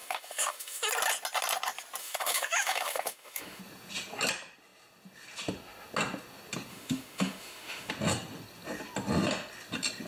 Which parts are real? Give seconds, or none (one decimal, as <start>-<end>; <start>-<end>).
0.9-2.0; 3.6-6.7; 7.9-10.1